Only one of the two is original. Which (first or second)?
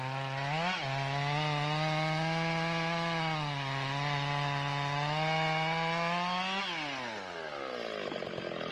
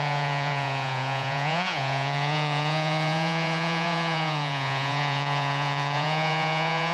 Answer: first